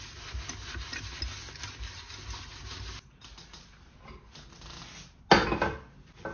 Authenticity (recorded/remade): recorded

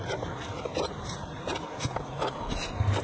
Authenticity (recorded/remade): remade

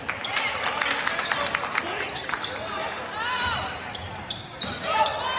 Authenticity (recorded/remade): recorded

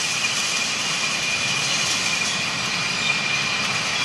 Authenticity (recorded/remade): recorded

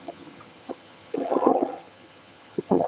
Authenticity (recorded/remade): remade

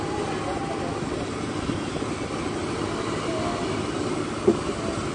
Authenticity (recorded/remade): recorded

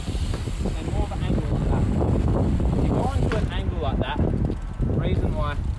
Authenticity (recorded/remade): recorded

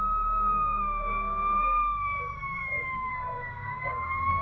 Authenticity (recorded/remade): remade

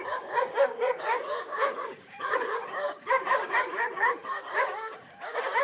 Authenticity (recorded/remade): remade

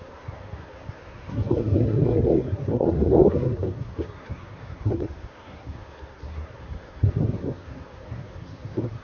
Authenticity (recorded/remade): remade